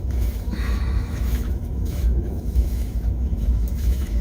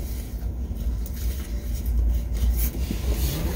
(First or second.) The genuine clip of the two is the second